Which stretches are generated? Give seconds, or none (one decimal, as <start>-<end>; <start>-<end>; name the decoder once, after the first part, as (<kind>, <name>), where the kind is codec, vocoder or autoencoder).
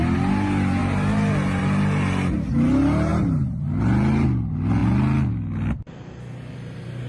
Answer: none